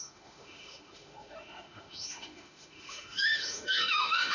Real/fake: fake